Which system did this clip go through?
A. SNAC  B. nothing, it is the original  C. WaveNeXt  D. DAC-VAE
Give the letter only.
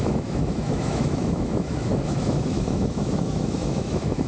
D